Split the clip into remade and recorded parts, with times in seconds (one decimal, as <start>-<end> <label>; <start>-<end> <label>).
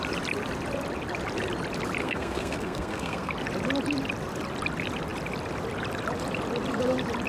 0.0-2.0 recorded; 2.0-3.3 remade; 3.3-7.3 recorded